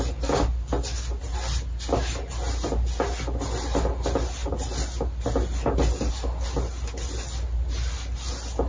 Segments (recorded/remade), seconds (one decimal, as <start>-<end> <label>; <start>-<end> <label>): 0.0-8.7 recorded